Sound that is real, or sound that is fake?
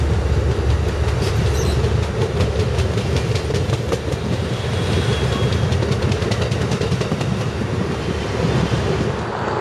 real